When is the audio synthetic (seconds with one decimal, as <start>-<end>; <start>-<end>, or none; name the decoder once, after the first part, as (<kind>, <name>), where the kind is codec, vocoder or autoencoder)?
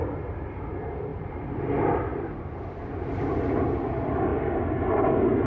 1.1-1.6 (vocoder, BigVGAN v2); 2.1-3.1